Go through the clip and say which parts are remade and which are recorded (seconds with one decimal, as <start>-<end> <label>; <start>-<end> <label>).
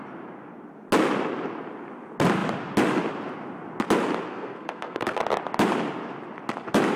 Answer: 0.0-4.3 recorded; 4.3-5.2 remade; 5.2-7.0 recorded